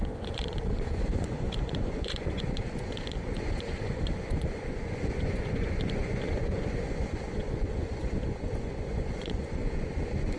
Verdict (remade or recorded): remade